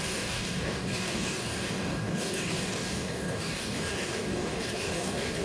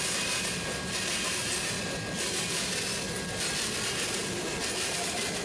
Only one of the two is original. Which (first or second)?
second